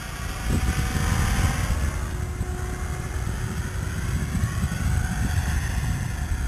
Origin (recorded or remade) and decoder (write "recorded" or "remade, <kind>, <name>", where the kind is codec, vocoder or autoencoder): recorded